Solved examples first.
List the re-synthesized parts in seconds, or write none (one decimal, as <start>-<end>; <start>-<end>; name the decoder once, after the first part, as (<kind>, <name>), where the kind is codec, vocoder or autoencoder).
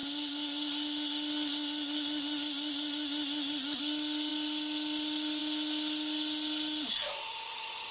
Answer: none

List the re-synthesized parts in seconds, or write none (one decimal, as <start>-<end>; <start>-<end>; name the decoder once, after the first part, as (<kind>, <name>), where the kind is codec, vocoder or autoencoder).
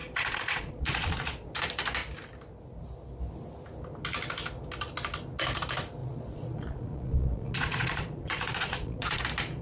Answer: 0.0-1.5 (vocoder, Vocos); 6.0-9.2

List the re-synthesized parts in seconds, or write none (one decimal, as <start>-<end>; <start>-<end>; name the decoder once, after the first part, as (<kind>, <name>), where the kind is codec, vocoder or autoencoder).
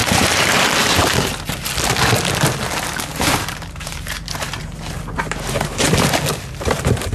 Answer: 0.0-0.6 (vocoder, BigVGAN v2); 3.1-5.0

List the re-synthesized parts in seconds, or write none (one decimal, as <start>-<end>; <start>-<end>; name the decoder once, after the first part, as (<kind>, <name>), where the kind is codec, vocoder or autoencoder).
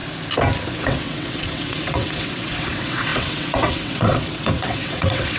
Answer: 0.7-5.4 (vocoder, WaveNeXt)